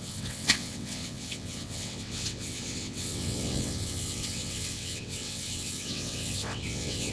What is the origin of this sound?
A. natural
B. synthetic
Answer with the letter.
B